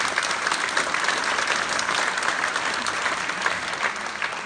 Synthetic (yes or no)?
no